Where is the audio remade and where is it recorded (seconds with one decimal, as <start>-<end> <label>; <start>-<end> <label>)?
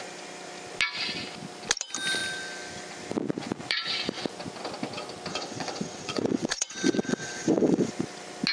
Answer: 0.0-5.3 recorded; 5.3-7.9 remade; 7.9-8.5 recorded